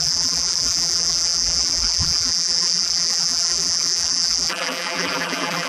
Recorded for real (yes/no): no